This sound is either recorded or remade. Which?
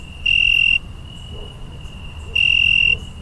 recorded